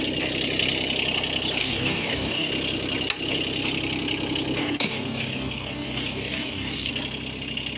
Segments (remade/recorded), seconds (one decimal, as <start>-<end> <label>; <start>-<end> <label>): 0.0-1.6 recorded; 1.6-2.5 remade; 2.5-4.6 recorded; 4.6-6.9 remade; 6.9-7.8 recorded